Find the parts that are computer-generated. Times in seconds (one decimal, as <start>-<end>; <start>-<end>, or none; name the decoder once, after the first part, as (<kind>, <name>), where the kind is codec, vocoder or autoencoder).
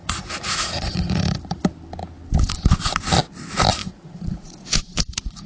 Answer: 0.0-1.6 (vocoder, Vocos); 3.8-5.5